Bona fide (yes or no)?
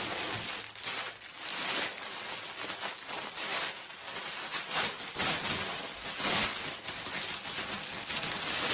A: yes